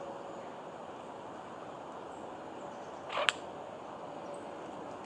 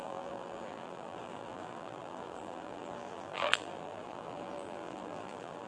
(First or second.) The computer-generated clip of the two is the second